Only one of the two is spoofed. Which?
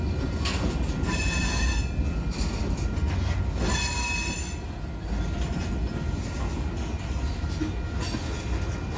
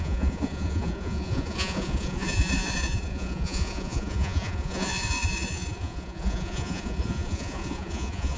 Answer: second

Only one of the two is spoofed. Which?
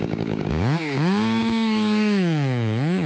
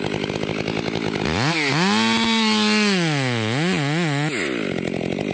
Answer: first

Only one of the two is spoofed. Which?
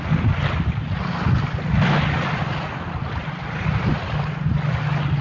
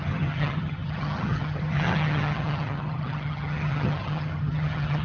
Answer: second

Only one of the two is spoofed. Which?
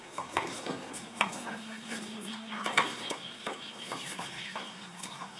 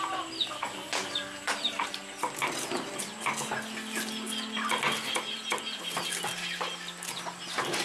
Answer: first